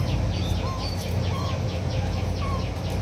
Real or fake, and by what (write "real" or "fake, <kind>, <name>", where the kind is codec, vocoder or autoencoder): real